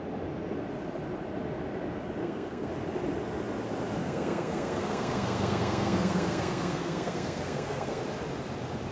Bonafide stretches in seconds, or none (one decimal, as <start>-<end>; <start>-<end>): 0.0-2.2; 2.7-4.0; 8.0-8.9